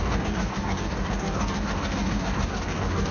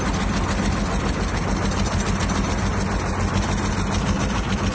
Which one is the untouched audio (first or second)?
second